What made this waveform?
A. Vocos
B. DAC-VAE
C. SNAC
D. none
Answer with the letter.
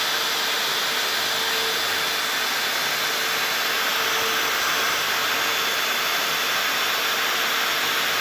D